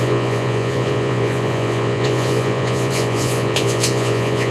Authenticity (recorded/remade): remade